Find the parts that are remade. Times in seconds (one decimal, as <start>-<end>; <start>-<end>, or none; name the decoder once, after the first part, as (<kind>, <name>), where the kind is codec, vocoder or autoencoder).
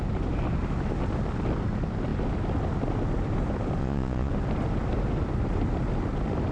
3.8-4.3 (vocoder, Vocos)